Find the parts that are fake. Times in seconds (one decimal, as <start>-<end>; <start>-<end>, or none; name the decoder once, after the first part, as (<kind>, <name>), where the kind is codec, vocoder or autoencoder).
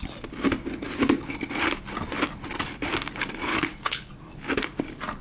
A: 3.5-4.1 (codec, HILCodec)